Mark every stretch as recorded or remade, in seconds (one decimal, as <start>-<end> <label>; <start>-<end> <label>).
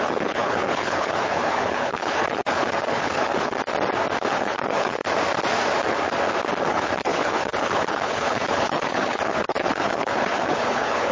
0.0-3.5 remade; 3.5-4.3 recorded; 4.3-5.0 remade; 5.0-6.6 recorded; 6.6-11.1 remade